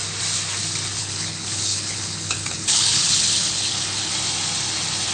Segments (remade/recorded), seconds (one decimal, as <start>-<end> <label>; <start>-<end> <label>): 0.0-1.0 recorded; 1.0-4.1 remade; 4.1-5.1 recorded

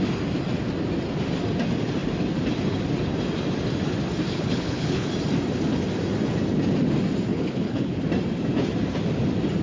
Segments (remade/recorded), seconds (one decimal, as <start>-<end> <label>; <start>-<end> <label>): 0.0-4.3 recorded; 4.3-5.1 remade; 5.1-7.3 recorded; 7.3-8.0 remade; 8.0-9.6 recorded

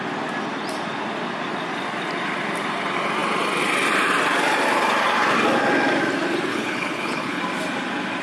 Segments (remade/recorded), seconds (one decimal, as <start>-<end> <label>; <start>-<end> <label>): 0.0-6.5 recorded; 6.5-7.4 remade; 7.4-8.2 recorded